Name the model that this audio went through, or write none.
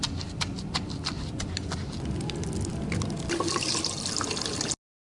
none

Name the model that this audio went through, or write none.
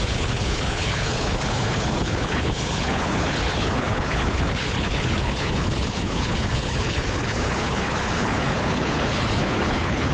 codec, HILCodec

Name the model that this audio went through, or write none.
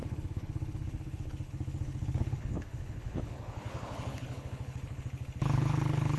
codec, HILCodec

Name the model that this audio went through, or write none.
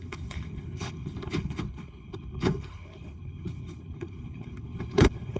codec, HILCodec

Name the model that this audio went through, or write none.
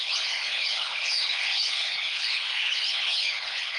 codec, HILCodec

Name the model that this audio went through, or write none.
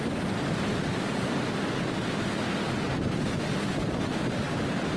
none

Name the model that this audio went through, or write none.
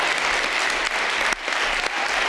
none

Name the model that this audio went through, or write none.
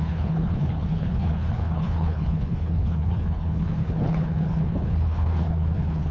codec, HILCodec